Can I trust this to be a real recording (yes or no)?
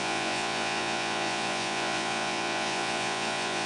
no